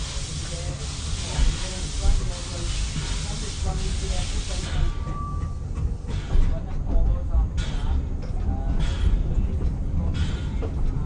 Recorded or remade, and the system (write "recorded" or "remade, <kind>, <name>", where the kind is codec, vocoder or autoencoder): recorded